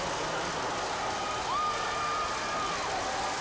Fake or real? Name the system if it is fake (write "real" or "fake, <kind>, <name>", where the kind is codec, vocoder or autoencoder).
real